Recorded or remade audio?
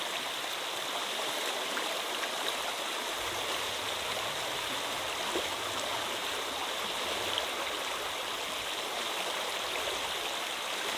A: recorded